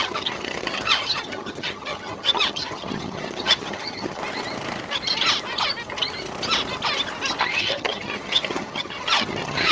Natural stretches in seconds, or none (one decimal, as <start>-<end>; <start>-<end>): 4.2-7.4